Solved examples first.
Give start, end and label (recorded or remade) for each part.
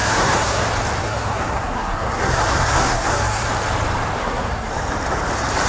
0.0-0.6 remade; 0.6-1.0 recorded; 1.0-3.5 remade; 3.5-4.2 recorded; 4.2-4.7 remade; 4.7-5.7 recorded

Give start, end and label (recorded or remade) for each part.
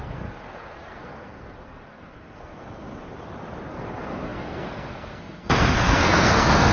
0.0-3.0 remade; 3.0-3.7 recorded; 3.7-6.7 remade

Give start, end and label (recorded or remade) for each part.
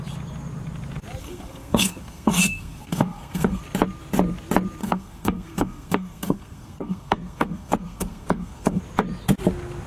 0.0-1.2 recorded; 1.2-3.6 remade; 3.6-4.8 recorded; 4.8-8.8 remade; 8.8-9.9 recorded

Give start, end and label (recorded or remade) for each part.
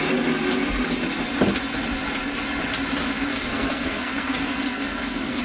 0.0-3.3 recorded; 3.3-5.4 remade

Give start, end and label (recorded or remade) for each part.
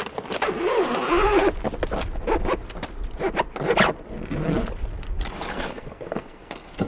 0.0-5.5 recorded; 5.5-6.9 remade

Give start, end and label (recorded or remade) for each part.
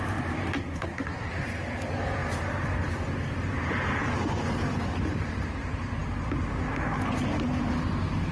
0.0-0.6 recorded; 0.6-1.3 remade; 1.3-8.3 recorded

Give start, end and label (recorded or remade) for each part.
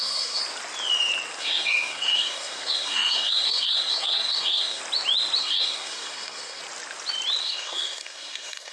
0.0-0.4 remade; 0.4-1.4 recorded; 1.4-4.8 remade; 4.8-5.4 recorded; 5.4-6.6 remade; 6.6-7.4 recorded; 7.4-8.7 remade